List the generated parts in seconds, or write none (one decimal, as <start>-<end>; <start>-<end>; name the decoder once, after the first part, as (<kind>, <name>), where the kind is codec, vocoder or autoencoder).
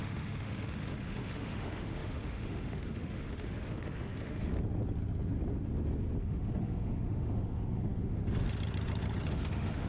0.0-4.5 (autoencoder, DAC-VAE); 6.2-8.2; 9.3-9.9